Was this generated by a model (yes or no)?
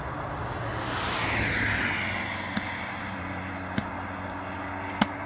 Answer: no